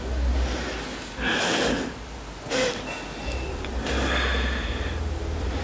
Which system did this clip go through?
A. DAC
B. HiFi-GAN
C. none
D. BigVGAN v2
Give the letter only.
C